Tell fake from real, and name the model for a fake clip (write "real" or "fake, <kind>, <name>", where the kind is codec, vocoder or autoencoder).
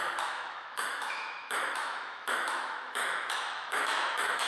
fake, autoencoder, DAC-VAE